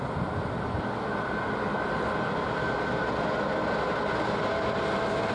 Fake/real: real